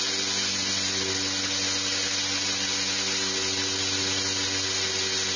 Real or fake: real